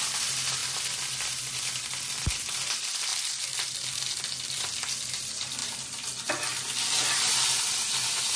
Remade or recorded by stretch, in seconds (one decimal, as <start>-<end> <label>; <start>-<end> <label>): 0.0-8.4 recorded

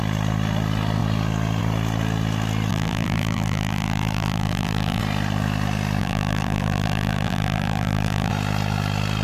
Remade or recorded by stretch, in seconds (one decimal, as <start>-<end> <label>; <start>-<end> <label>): 0.0-2.7 recorded; 2.7-5.0 remade; 5.0-6.0 recorded; 6.0-8.3 remade; 8.3-9.2 recorded